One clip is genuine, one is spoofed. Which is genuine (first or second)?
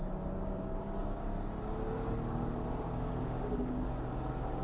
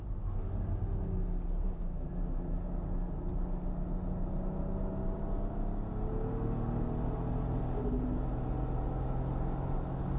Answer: second